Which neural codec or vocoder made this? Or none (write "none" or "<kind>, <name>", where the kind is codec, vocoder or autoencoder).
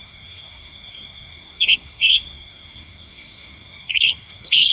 codec, SNAC